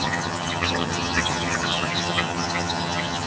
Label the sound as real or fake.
fake